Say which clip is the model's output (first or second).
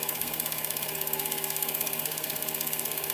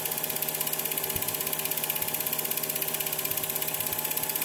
first